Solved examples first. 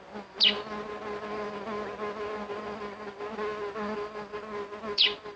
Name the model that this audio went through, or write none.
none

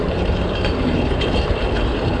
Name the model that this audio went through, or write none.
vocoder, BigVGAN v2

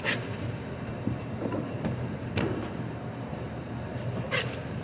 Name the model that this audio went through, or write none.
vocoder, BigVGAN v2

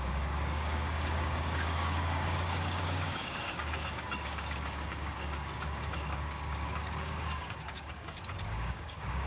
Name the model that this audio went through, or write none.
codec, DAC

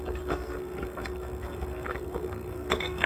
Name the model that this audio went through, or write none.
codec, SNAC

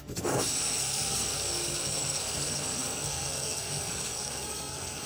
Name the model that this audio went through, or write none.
codec, SNAC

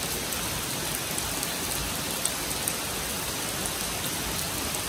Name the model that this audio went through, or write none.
none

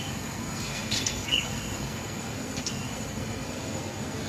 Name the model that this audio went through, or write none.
codec, SNAC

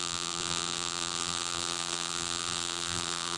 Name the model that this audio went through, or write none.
vocoder, BigVGAN v2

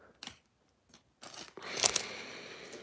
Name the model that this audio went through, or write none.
none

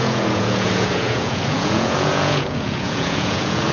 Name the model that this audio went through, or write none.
vocoder, Vocos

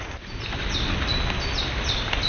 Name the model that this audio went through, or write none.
none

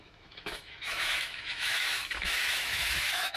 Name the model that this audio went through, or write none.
autoencoder, DAC-VAE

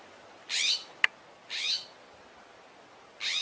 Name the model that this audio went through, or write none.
none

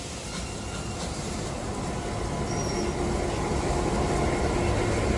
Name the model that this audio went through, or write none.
none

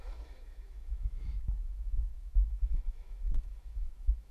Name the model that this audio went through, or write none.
autoencoder, DAC-VAE